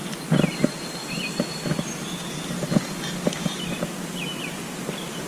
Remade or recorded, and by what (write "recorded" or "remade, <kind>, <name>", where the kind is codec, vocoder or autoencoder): recorded